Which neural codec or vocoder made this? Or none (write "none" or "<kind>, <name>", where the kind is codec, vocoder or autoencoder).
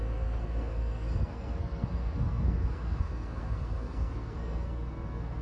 codec, SNAC